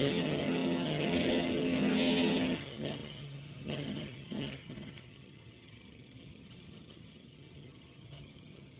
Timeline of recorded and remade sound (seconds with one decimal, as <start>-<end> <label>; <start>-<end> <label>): 0.0-8.8 remade